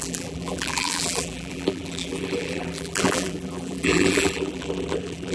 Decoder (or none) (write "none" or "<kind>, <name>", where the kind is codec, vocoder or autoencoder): vocoder, BigVGAN v2